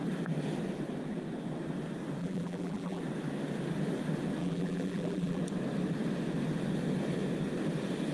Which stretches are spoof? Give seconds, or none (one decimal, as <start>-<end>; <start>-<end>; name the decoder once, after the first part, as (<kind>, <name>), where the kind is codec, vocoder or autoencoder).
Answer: 2.2-3.0 (vocoder, BigVGAN v2); 4.4-5.4